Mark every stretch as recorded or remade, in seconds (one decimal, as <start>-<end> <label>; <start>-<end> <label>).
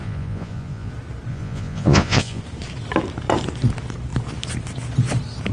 0.0-0.9 remade; 0.9-1.3 recorded; 1.3-2.4 remade; 2.4-5.5 recorded